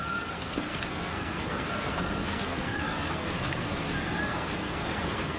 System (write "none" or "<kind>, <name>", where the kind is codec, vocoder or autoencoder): codec, SNAC